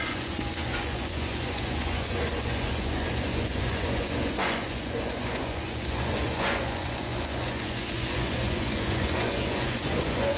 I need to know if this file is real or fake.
fake